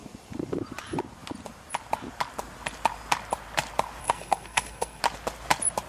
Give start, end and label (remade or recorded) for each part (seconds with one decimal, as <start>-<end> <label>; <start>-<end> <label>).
0.0-4.0 recorded; 4.0-5.0 remade; 5.0-5.9 recorded